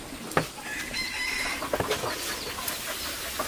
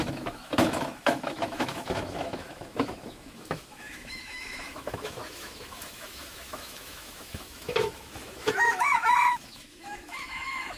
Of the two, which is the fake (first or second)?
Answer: second